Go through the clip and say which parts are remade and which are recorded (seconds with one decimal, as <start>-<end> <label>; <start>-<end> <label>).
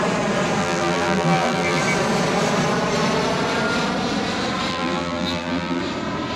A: 0.0-0.6 recorded; 0.6-1.8 remade; 1.8-4.7 recorded; 4.7-5.8 remade; 5.8-6.4 recorded